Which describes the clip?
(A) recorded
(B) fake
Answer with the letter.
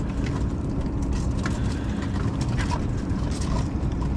A